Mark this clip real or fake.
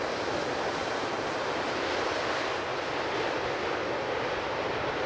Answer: real